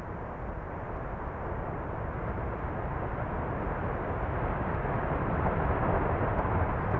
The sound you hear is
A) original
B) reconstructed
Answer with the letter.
A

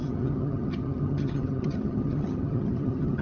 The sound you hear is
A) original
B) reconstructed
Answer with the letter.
B